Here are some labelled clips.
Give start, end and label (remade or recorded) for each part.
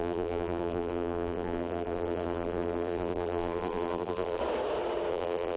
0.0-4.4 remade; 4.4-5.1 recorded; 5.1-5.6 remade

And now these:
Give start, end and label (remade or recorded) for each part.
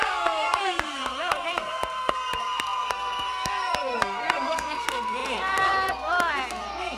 0.0-7.0 remade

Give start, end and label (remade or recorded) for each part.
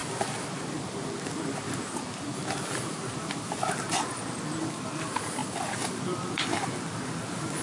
0.0-7.6 recorded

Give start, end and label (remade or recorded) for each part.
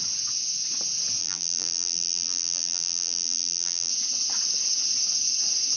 0.0-1.2 recorded; 1.2-3.9 remade; 3.9-5.8 recorded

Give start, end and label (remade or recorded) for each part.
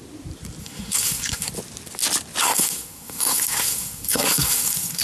0.0-0.6 recorded; 0.6-1.5 remade; 1.5-2.4 recorded; 2.4-5.0 remade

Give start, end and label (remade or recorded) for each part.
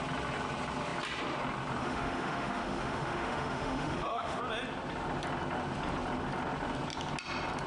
0.0-1.8 recorded; 1.8-4.4 remade; 4.4-7.7 recorded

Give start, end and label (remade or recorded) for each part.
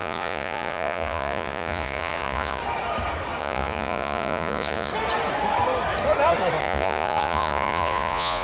0.0-2.6 remade; 2.6-3.4 recorded; 3.4-4.9 remade; 4.9-6.6 recorded; 6.6-8.4 remade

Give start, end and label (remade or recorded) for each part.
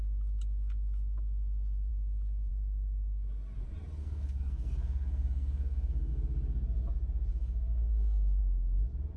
0.0-4.0 recorded; 4.0-6.1 remade; 6.1-7.3 recorded; 7.3-8.4 remade; 8.4-9.2 recorded